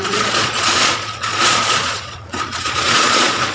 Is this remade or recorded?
remade